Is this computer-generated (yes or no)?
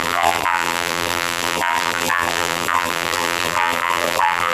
yes